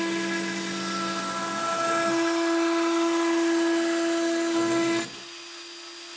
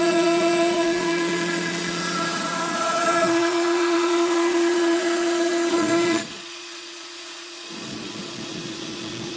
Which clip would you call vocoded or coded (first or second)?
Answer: second